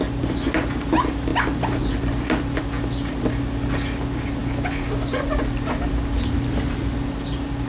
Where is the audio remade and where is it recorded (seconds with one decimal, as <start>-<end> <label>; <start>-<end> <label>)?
0.0-7.7 recorded